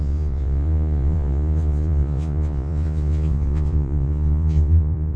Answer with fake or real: fake